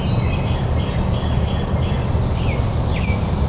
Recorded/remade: recorded